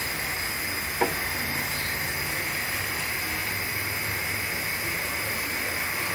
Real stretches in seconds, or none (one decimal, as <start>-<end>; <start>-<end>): 0.0-6.1